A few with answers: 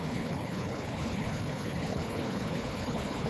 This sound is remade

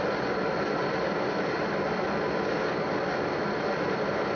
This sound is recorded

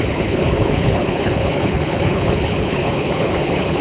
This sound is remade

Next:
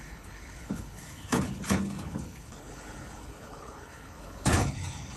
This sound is remade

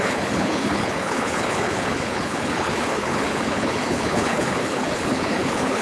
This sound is remade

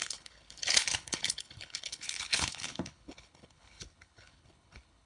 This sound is remade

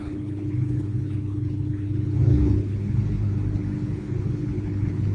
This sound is remade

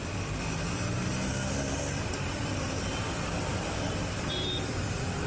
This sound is recorded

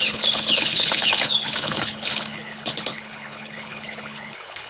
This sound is remade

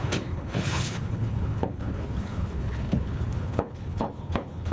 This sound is remade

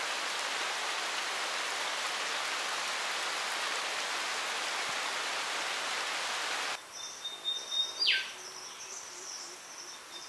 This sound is recorded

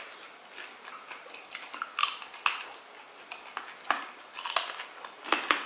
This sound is recorded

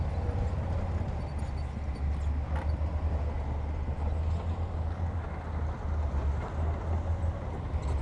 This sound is recorded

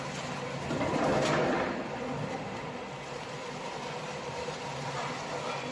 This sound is recorded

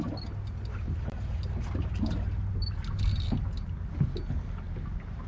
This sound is recorded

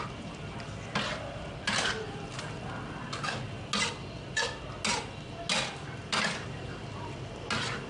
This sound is recorded